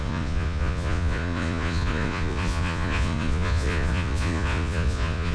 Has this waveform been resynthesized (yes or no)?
yes